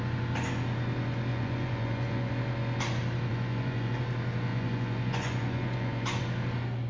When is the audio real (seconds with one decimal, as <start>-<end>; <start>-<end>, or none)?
0.0-1.3; 2.3-3.3; 4.0-4.5; 6.2-6.9